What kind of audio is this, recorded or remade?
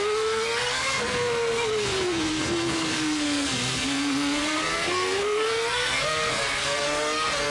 remade